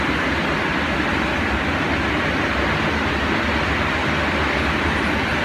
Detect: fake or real real